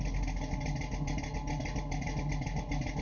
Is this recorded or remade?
recorded